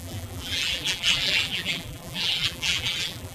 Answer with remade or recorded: remade